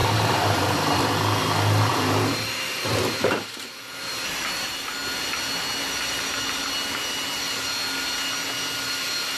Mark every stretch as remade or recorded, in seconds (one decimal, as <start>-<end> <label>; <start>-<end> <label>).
0.0-1.0 remade; 1.0-1.9 recorded; 1.9-4.1 remade; 4.1-9.4 recorded